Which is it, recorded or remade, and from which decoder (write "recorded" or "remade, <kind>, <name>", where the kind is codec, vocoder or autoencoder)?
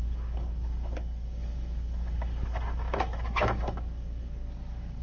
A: remade, codec, DAC